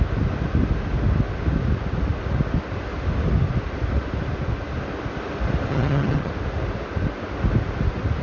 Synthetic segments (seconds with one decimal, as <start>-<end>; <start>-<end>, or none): 5.7-6.3